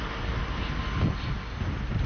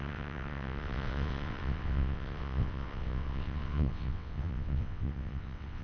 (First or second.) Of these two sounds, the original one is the first